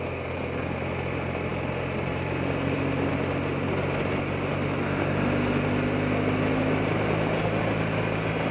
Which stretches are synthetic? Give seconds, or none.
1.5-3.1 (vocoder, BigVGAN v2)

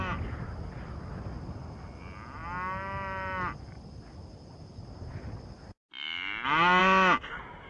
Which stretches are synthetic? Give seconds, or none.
none